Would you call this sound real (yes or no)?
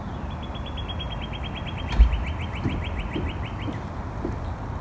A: yes